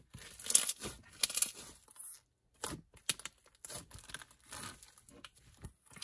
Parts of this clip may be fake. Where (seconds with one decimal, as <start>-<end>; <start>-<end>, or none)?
none